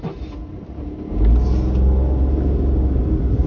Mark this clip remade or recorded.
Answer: recorded